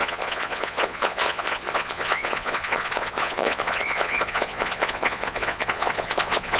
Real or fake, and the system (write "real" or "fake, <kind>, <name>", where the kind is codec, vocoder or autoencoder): fake, vocoder, Vocos